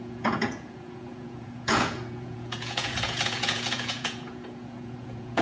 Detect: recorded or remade remade